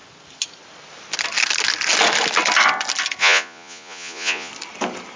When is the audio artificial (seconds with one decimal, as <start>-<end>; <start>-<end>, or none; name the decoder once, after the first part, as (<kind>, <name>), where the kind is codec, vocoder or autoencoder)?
3.2-4.5 (vocoder, Vocos)